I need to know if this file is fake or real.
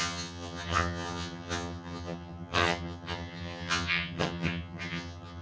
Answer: fake